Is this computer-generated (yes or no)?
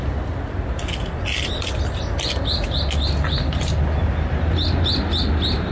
no